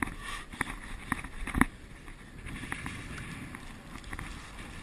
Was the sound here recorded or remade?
recorded